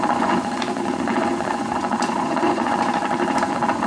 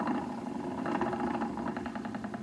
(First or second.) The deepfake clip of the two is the first